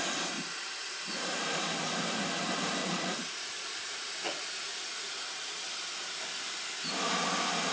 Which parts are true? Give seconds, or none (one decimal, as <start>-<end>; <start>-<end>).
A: 0.0-2.8; 5.1-7.7